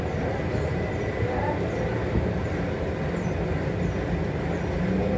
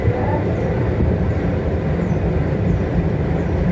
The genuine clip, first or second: first